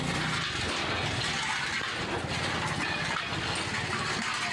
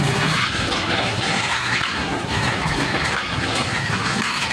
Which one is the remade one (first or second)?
second